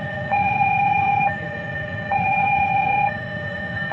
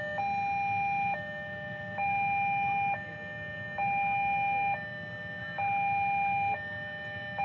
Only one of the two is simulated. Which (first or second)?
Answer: first